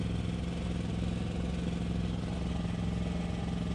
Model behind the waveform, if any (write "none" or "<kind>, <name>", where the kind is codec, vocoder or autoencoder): none